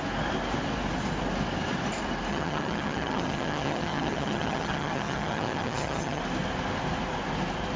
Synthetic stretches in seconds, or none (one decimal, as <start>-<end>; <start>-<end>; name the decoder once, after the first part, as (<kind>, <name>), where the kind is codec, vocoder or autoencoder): 2.3-6.2 (vocoder, HiFi-GAN)